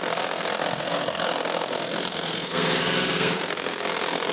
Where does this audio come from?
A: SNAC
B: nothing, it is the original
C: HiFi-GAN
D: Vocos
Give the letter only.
A